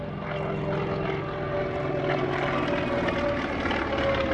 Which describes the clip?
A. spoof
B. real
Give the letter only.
B